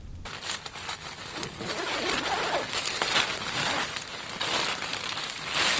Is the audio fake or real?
real